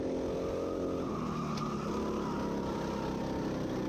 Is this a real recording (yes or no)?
yes